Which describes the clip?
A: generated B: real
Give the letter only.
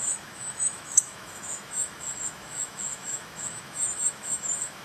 A